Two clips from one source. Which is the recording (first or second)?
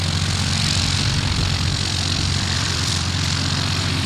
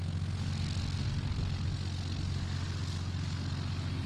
second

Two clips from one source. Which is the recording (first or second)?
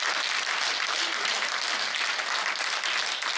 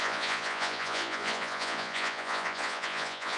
first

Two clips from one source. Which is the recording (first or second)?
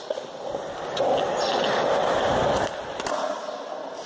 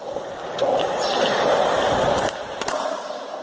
first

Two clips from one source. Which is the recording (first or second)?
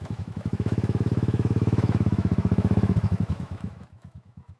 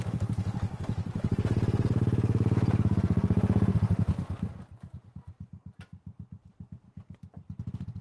second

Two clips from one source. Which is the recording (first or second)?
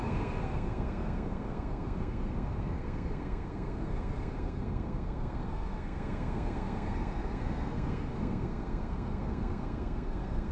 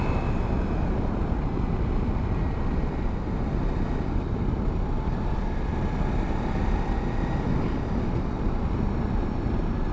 second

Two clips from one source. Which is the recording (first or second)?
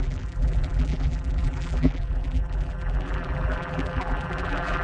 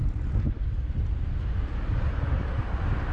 second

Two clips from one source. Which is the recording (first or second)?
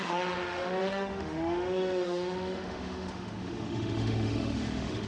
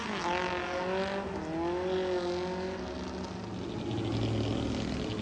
second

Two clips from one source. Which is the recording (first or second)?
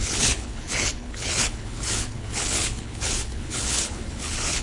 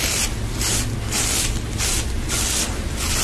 second